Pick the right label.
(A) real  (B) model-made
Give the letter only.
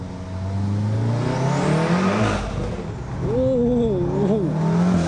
A